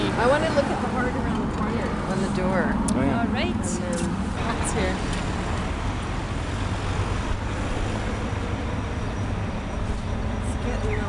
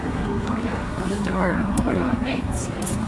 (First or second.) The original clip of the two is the first